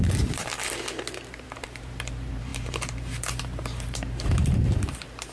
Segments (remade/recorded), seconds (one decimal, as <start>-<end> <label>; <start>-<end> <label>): 0.0-0.5 remade; 0.5-1.3 recorded; 1.3-5.3 remade